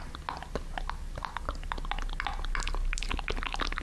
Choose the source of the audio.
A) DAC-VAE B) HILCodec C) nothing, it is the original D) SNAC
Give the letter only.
C